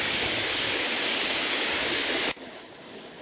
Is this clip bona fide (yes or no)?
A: no